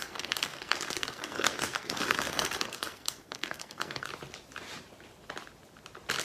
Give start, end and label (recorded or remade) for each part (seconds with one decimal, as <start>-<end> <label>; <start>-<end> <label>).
0.0-4.1 remade; 4.1-6.2 recorded